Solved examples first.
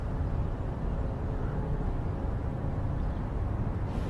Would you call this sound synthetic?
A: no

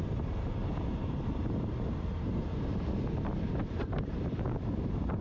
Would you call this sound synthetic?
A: yes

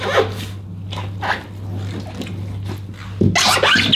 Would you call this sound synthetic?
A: no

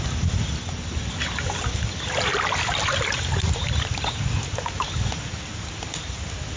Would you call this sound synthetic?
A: no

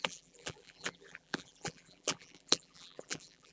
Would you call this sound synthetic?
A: yes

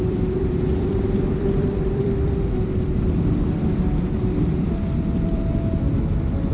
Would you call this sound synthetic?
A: yes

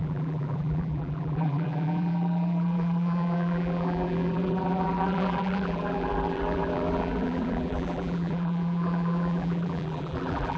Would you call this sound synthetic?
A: yes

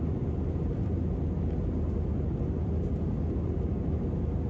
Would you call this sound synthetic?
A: no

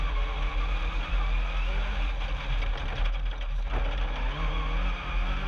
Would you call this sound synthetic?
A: no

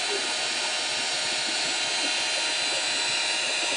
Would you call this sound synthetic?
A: no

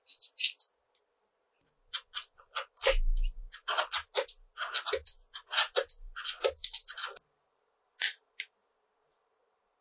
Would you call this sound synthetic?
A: no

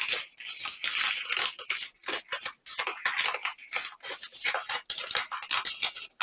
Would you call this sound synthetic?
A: no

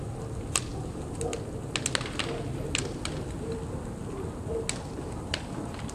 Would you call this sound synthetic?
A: no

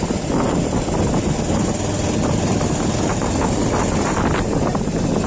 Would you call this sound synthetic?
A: no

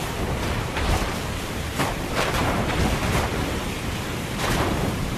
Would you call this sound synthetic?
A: yes